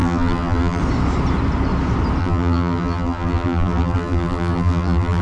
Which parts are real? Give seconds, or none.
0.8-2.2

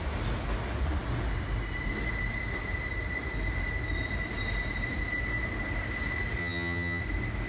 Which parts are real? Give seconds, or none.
0.0-6.4; 7.0-7.5

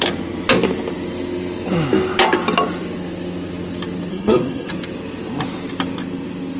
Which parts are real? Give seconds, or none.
0.0-4.1; 4.7-6.6

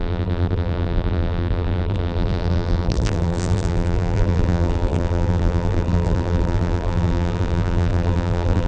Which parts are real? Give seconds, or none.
none

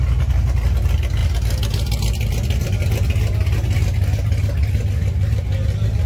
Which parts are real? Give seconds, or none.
0.0-6.1

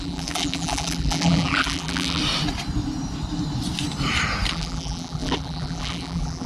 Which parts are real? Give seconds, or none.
2.2-4.5